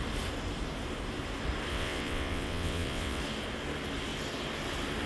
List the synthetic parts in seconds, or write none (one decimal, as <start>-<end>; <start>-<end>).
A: 1.7-3.2

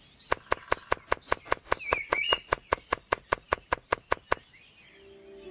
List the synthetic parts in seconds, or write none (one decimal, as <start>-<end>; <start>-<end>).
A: 1.9-4.0